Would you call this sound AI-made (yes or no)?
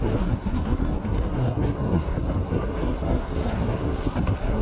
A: yes